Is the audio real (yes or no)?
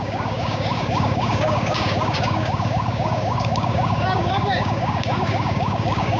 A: no